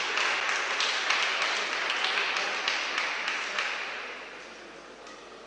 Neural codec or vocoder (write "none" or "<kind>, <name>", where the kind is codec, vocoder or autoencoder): none